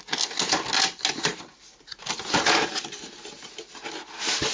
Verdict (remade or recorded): recorded